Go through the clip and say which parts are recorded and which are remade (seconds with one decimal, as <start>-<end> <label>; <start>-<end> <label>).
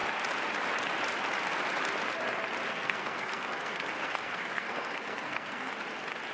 0.0-2.7 recorded; 2.7-5.7 remade; 5.7-6.3 recorded